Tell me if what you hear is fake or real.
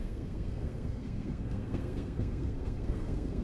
fake